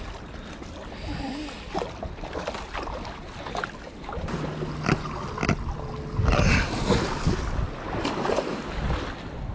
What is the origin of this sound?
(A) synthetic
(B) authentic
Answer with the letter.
B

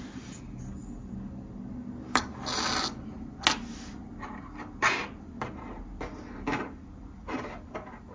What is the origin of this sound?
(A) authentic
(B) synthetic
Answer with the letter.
A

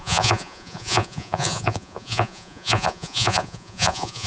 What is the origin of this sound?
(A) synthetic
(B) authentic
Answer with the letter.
A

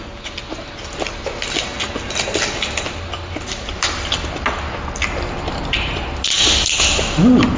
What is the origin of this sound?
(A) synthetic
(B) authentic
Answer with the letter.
B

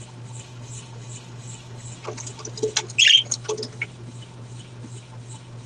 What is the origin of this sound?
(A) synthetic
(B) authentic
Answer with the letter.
B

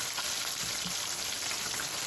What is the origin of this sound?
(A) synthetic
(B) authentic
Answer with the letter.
B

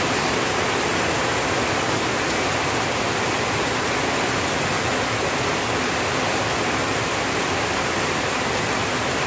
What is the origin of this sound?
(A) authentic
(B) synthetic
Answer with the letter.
A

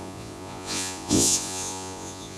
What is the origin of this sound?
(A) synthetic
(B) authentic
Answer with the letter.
A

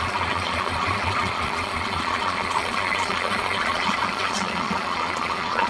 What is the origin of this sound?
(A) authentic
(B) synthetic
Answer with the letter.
B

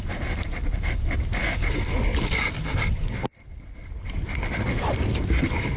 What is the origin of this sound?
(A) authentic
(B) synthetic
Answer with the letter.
A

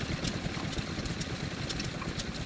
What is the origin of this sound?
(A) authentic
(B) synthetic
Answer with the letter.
A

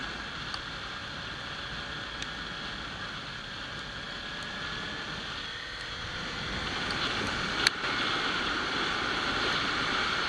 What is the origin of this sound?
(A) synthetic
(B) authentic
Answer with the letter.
B